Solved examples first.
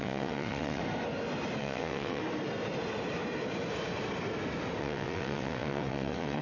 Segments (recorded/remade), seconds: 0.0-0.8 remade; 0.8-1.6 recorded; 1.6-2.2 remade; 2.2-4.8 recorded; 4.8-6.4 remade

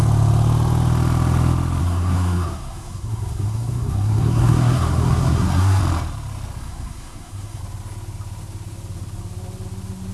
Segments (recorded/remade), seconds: 0.0-1.8 recorded; 1.8-5.8 remade; 5.8-6.6 recorded; 6.6-7.6 remade; 7.6-10.1 recorded

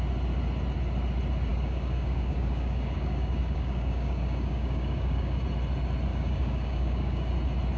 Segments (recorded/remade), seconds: 0.0-1.5 recorded; 1.5-5.4 remade; 5.4-6.1 recorded; 6.1-7.3 remade; 7.3-7.8 recorded

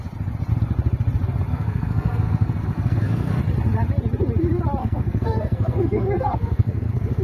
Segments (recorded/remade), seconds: 0.0-1.5 recorded; 1.5-3.4 remade; 3.4-4.8 recorded; 4.8-7.2 remade

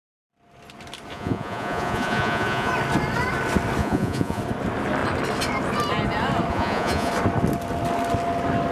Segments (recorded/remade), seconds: 0.0-1.1 recorded; 1.1-2.7 remade; 2.7-3.8 recorded; 3.8-4.4 remade; 4.4-6.5 recorded; 6.5-7.1 remade; 7.1-8.7 recorded

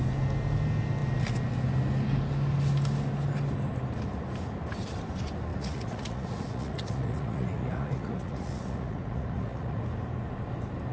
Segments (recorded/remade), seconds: 0.0-5.5 recorded; 5.5-9.8 remade; 9.8-10.9 recorded